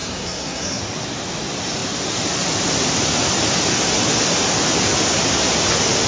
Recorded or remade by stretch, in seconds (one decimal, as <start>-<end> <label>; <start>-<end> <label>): 0.0-0.8 remade; 0.8-6.1 recorded